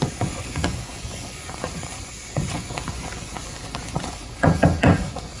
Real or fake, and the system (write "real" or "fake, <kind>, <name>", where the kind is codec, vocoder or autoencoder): fake, vocoder, Vocos